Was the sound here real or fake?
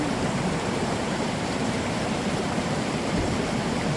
fake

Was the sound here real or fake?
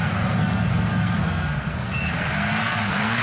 fake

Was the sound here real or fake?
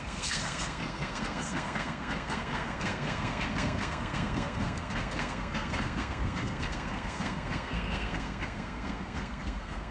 fake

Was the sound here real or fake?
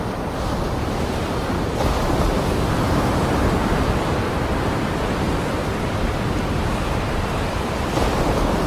real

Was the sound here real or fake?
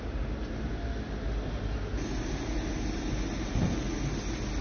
real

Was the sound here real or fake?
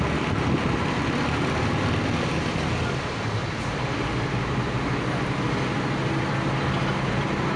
real